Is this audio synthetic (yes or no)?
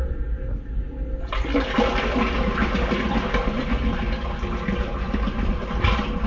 no